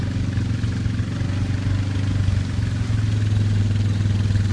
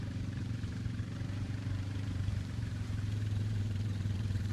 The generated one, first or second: second